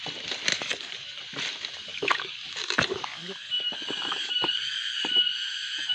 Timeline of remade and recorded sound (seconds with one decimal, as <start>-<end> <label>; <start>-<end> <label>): 0.0-0.5 recorded; 0.5-1.2 remade; 1.2-1.9 recorded; 1.9-5.1 remade; 5.1-5.9 recorded